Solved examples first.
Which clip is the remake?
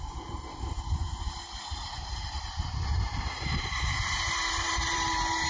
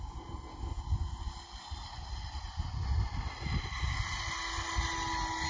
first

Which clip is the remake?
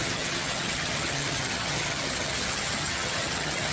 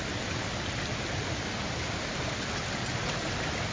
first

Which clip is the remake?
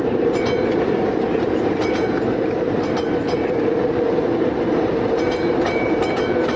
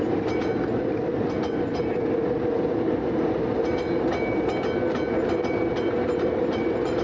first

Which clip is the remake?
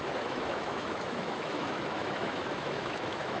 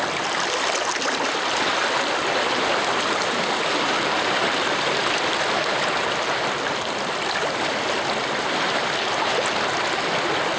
first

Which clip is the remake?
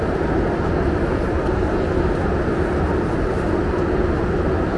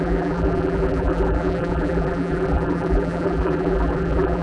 second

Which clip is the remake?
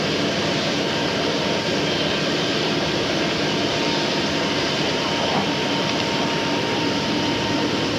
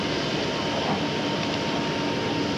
first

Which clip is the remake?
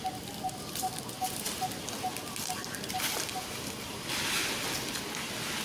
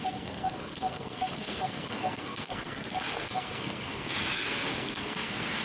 second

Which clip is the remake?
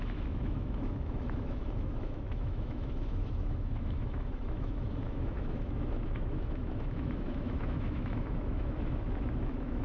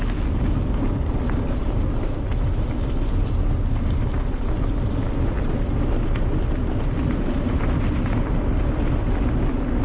first